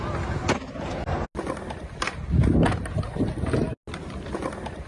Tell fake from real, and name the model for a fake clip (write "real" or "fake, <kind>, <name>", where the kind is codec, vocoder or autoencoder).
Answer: real